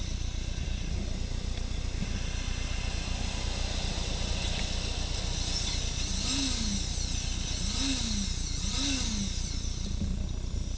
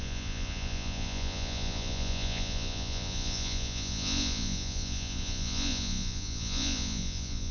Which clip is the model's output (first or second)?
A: second